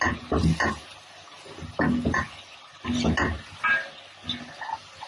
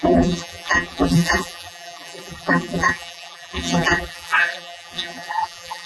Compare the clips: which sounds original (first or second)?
first